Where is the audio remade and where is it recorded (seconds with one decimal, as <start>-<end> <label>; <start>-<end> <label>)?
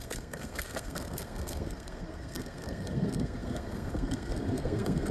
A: 0.0-5.1 remade